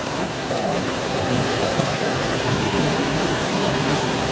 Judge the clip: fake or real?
fake